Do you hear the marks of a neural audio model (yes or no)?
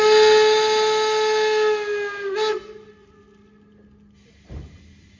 no